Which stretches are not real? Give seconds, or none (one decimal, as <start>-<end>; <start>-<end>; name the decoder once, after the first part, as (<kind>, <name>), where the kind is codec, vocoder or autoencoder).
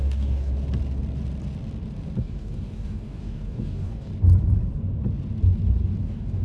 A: 0.0-0.5 (codec, DAC); 2.2-4.1; 6.0-6.4